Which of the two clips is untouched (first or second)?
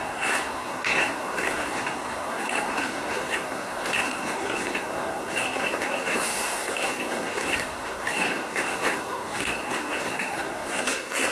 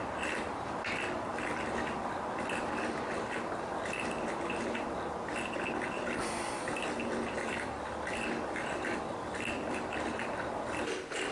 second